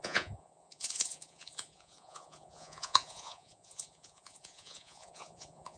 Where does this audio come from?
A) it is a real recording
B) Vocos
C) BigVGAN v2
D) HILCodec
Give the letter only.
B